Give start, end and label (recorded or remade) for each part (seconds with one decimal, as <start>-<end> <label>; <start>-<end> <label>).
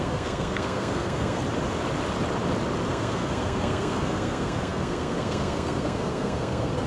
0.0-1.4 remade; 1.4-2.9 recorded; 2.9-6.9 remade